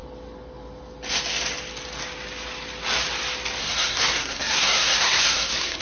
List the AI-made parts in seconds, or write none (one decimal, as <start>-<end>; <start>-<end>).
3.6-5.8

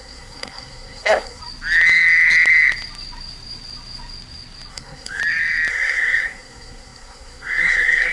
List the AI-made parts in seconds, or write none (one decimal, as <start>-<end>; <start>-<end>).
0.0-1.4; 4.7-5.2; 5.7-8.1

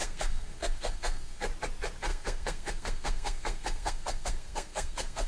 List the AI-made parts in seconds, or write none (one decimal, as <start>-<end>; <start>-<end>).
0.0-1.4; 2.1-5.3

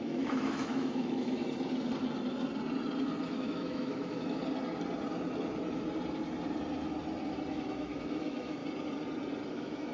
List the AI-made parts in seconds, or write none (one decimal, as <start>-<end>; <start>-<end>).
0.0-1.4; 3.2-4.4; 7.5-8.6; 9.5-9.9

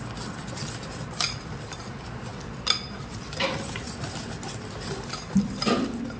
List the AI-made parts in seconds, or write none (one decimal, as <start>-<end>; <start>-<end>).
none

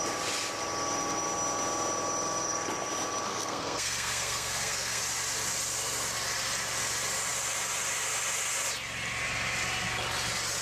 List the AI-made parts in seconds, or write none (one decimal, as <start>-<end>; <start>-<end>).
3.3-5.0

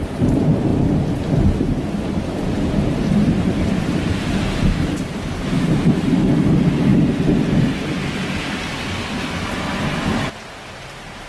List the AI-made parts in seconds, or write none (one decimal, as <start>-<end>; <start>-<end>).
0.0-0.7; 1.8-6.9; 10.1-11.3

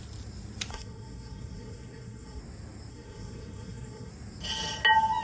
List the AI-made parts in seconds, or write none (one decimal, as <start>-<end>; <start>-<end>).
0.7-2.4; 2.9-4.1